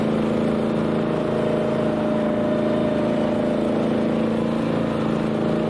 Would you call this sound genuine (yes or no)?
yes